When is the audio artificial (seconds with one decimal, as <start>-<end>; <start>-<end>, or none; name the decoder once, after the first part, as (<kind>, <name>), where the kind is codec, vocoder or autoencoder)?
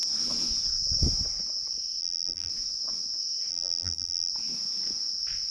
2.0-2.5 (vocoder, BigVGAN v2); 3.5-4.3